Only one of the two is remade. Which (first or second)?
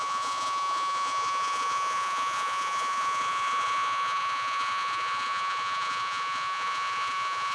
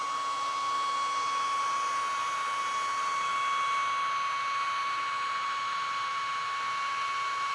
first